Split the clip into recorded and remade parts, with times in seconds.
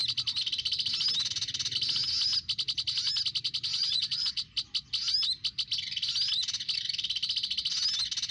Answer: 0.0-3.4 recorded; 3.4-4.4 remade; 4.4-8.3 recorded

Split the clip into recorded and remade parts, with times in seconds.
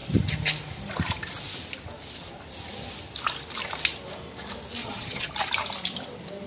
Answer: 0.0-4.8 recorded; 4.8-5.3 remade; 5.3-6.5 recorded